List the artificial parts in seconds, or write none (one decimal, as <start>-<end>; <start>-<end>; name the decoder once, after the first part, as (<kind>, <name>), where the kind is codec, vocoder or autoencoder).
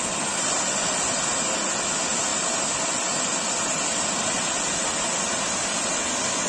none